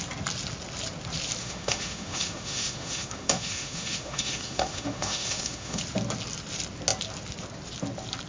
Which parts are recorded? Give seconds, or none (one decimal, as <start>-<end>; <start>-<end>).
0.0-1.4; 5.8-8.3